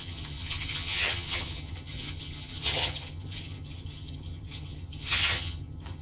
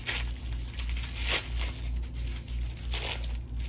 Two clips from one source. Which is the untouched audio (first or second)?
second